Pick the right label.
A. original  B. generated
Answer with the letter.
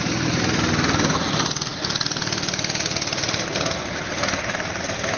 A